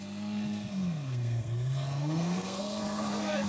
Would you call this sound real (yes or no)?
no